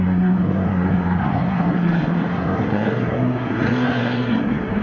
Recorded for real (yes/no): no